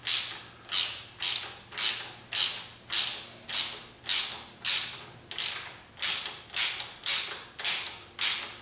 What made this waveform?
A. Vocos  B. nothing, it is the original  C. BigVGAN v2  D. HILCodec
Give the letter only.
B